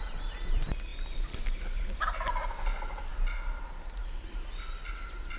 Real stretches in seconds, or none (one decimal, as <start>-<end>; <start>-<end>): 0.0-5.4